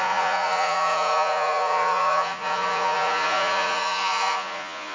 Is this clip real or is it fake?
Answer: fake